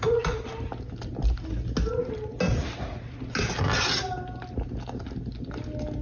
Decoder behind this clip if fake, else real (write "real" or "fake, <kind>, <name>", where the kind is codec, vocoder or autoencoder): real